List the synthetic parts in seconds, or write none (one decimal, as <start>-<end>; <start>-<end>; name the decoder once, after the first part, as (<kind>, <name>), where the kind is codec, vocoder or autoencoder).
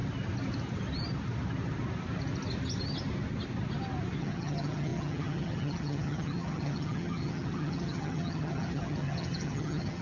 4.2-10.0 (vocoder, HiFi-GAN)